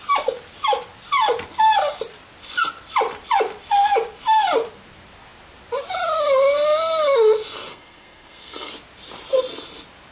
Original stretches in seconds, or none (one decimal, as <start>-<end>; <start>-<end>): 0.0-7.7; 8.7-10.1